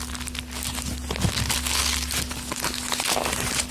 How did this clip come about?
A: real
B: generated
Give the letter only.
A